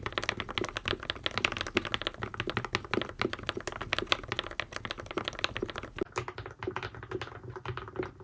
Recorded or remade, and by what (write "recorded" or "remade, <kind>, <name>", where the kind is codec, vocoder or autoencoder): recorded